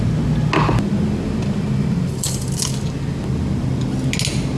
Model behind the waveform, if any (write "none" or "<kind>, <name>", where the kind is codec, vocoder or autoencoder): none